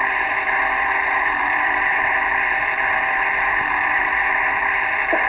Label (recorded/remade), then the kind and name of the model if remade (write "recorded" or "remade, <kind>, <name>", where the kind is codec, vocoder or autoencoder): remade, vocoder, BigVGAN v2